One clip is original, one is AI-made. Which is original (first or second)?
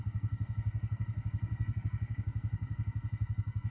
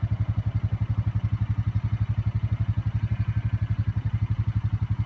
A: second